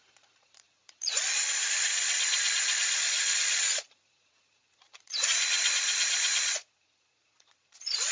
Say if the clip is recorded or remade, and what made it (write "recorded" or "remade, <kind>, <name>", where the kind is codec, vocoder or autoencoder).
remade, vocoder, Vocos